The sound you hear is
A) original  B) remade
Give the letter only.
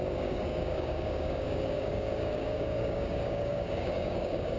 B